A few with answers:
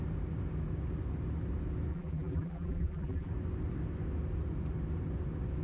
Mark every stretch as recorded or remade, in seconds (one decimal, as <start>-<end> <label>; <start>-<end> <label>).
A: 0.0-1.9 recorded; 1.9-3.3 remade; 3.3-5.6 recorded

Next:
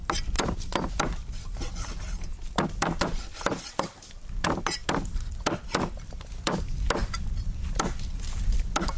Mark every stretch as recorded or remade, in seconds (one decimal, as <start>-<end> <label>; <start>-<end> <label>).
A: 0.0-9.0 recorded

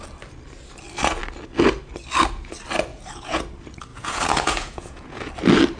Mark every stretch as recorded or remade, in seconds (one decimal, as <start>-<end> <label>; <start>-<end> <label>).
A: 0.0-2.9 recorded; 2.9-3.4 remade; 3.4-3.9 recorded; 3.9-5.3 remade; 5.3-5.8 recorded